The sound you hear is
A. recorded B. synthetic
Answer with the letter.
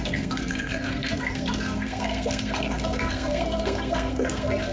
B